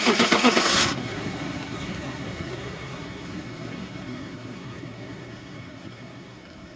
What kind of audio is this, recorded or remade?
remade